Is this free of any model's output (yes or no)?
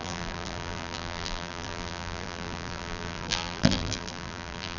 no